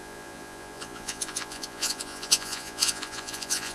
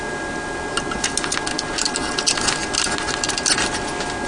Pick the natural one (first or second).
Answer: second